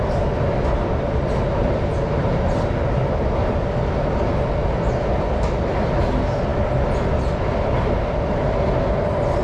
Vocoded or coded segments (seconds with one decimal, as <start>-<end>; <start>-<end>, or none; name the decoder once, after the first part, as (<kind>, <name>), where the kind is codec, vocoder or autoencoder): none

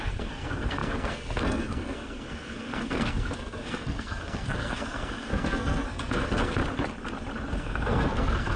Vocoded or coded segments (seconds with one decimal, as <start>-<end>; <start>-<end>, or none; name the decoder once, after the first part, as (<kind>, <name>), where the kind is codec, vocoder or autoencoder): 0.0-6.6 (codec, SNAC); 7.5-8.6

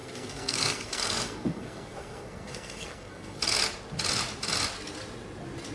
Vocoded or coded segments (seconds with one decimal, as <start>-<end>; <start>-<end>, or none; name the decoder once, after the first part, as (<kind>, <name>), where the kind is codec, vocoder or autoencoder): 0.0-3.4 (codec, SNAC)

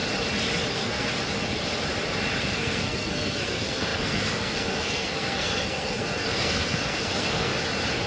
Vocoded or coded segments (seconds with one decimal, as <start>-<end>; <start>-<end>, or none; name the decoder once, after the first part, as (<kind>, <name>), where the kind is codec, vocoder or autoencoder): 0.7-1.1 (codec, SNAC); 2.4-7.5

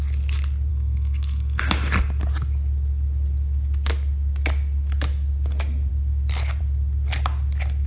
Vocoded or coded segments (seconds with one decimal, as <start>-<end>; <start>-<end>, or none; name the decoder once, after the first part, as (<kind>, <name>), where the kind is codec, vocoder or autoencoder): 0.7-1.6 (codec, SNAC)